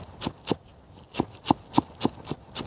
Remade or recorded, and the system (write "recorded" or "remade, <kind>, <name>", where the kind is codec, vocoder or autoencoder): recorded